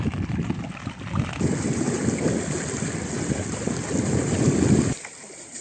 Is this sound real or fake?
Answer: real